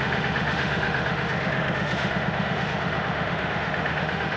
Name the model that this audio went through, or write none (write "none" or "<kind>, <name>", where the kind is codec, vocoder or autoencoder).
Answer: autoencoder, DAC-VAE